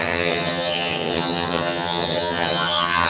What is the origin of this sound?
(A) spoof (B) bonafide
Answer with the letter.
A